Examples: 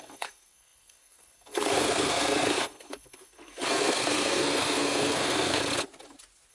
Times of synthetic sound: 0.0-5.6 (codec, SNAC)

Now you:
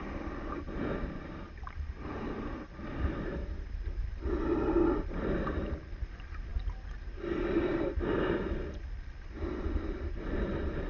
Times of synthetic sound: none